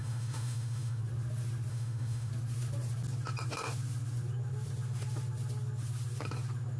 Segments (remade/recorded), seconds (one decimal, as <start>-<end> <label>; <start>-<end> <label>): 0.0-1.0 remade; 1.0-1.7 recorded; 1.7-2.3 remade; 2.3-6.8 recorded